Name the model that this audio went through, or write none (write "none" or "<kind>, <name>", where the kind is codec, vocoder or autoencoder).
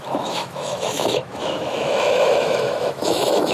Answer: autoencoder, DAC-VAE